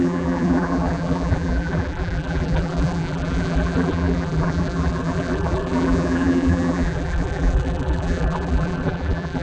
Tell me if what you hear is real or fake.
fake